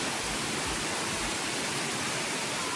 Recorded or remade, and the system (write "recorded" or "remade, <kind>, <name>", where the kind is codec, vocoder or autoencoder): recorded